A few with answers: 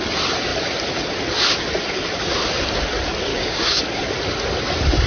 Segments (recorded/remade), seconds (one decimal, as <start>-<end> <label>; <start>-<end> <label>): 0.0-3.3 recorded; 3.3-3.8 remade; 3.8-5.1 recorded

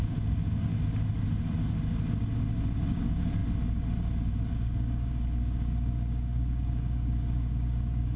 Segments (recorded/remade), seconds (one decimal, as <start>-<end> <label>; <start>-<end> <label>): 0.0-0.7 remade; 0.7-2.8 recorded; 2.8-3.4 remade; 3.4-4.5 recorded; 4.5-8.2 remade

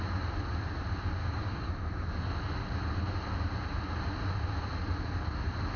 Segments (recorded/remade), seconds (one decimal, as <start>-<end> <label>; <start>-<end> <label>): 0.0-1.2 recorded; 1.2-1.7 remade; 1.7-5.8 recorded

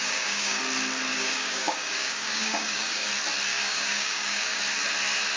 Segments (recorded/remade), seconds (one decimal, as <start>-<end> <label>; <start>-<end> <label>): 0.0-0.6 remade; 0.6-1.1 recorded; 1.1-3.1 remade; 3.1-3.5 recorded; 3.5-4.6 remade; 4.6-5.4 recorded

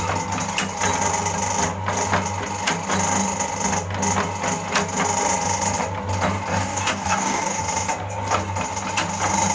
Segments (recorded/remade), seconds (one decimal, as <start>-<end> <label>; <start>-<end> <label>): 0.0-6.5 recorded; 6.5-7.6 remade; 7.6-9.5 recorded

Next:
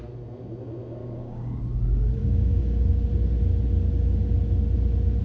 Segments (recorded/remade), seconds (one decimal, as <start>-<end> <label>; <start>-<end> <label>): 0.0-1.0 recorded; 1.0-1.6 remade; 1.6-2.2 recorded; 2.2-2.9 remade; 2.9-5.2 recorded

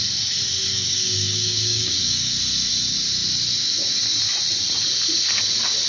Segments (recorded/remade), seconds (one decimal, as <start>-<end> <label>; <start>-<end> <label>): 0.0-0.7 recorded; 0.7-2.4 remade; 2.4-5.9 recorded

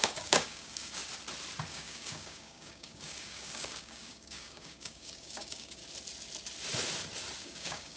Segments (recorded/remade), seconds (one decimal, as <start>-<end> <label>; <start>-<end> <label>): 0.0-1.0 remade; 1.0-1.7 recorded; 1.7-5.8 remade; 5.8-7.4 recorded; 7.4-8.0 remade